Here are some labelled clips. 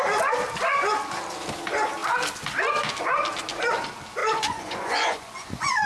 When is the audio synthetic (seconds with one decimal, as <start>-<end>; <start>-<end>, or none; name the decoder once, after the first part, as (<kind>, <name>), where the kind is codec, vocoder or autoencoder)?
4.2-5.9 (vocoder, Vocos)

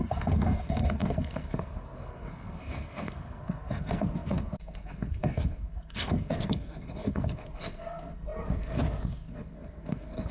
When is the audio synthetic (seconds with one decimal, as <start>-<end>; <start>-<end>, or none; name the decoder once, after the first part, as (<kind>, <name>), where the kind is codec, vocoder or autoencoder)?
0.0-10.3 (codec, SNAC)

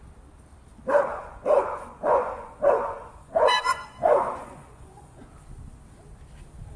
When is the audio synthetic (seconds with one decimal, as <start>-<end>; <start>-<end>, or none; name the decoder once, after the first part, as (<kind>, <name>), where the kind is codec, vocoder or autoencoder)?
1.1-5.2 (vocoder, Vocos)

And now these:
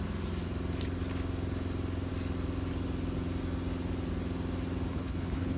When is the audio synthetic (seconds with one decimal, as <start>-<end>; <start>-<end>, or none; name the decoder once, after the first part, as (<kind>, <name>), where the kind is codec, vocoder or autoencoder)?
4.9-5.6 (codec, HILCodec)